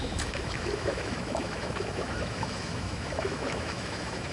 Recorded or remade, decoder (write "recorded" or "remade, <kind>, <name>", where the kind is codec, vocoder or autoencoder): remade, autoencoder, DAC-VAE